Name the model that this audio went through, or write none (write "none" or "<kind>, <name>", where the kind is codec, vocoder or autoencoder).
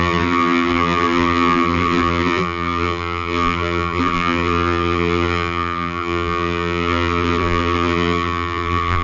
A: vocoder, BigVGAN v2